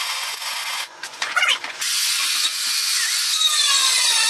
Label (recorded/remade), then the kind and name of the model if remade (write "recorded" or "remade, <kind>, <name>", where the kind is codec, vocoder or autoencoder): remade, vocoder, Vocos